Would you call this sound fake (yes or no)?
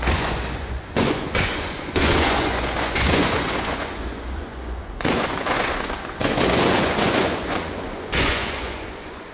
yes